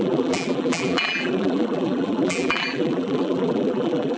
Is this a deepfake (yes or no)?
yes